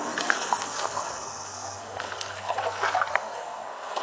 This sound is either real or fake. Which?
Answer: fake